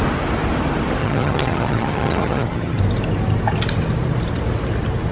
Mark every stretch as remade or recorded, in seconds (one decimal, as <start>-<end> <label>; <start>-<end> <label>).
0.0-1.0 recorded; 1.0-2.8 remade; 2.8-5.1 recorded